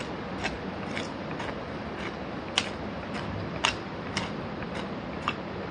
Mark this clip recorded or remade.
recorded